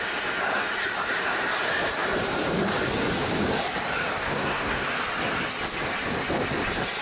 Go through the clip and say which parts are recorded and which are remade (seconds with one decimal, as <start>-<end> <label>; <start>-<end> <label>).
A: 0.0-4.2 recorded; 4.2-4.9 remade; 4.9-7.0 recorded